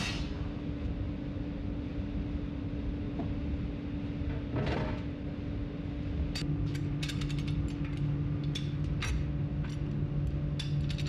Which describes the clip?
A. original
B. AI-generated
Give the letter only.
A